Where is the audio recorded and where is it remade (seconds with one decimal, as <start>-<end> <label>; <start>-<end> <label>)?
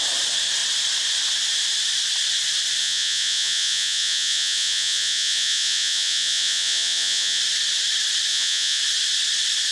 0.0-2.8 recorded; 2.8-7.4 remade; 7.4-8.3 recorded; 8.3-8.8 remade; 8.8-9.7 recorded